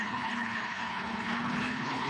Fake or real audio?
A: fake